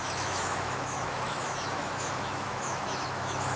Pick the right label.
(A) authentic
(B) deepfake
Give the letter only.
B